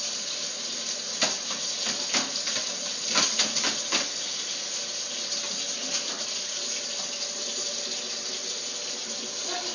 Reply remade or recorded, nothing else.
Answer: recorded